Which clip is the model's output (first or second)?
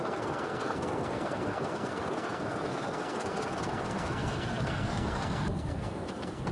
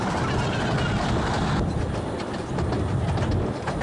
first